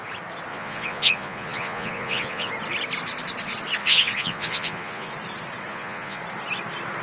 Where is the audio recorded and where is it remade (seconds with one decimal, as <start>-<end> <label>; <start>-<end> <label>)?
0.0-0.5 recorded; 0.5-2.5 remade; 2.5-3.8 recorded; 3.8-5.1 remade; 5.1-5.7 recorded; 5.7-6.2 remade; 6.2-7.0 recorded

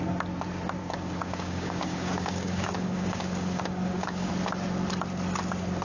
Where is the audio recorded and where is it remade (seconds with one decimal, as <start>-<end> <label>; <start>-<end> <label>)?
0.0-0.8 recorded; 0.8-4.3 remade; 4.3-5.8 recorded

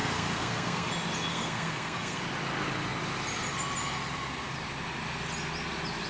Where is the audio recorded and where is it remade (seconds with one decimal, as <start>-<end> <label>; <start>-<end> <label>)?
0.0-0.9 remade; 0.9-1.3 recorded; 1.3-2.2 remade; 2.2-6.1 recorded

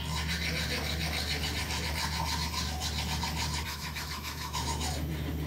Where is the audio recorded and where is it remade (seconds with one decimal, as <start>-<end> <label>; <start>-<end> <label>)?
0.0-3.7 recorded; 3.7-4.9 remade; 4.9-5.5 recorded

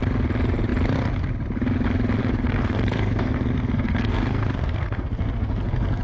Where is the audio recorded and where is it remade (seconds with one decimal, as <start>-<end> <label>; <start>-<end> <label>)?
0.0-2.2 recorded; 2.2-6.0 remade

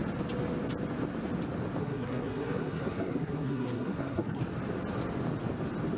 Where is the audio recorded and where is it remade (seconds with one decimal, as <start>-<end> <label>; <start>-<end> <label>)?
0.0-1.8 recorded; 1.8-4.4 remade; 4.4-6.0 recorded